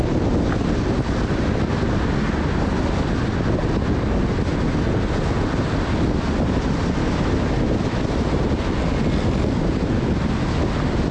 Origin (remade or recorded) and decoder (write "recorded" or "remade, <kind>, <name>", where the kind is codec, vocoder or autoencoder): recorded